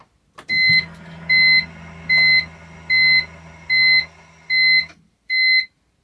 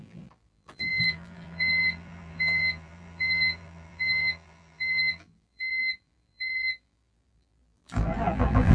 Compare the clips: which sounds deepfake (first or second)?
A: second